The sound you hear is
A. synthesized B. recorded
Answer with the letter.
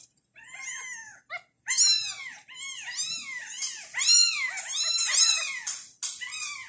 B